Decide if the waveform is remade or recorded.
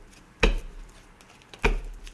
recorded